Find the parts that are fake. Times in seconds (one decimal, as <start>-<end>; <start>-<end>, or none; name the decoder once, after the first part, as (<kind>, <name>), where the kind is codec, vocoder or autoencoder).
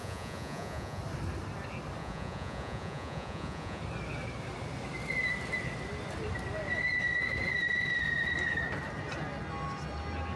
0.0-1.0 (vocoder, Vocos); 2.0-3.8